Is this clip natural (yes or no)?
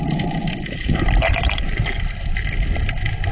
no